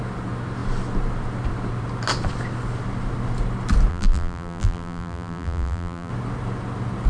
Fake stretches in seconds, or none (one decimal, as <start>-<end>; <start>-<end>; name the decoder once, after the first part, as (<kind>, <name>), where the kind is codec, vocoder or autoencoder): 3.9-6.1 (vocoder, BigVGAN v2)